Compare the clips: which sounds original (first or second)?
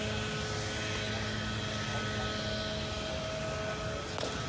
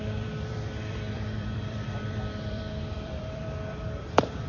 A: first